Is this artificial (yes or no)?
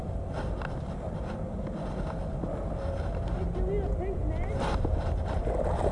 no